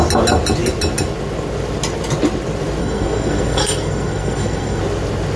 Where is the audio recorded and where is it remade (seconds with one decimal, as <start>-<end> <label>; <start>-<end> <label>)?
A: 0.0-2.8 recorded; 2.8-4.8 remade; 4.8-5.4 recorded